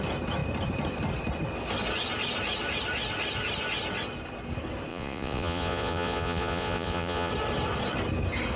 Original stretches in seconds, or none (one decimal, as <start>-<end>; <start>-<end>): 0.0-4.9; 7.3-8.6